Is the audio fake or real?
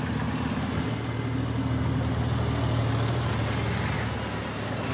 real